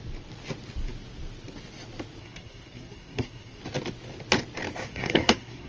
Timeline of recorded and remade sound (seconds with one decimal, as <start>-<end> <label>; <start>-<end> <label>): 0.0-2.2 recorded; 2.2-3.6 remade; 3.6-4.9 recorded; 4.9-5.7 remade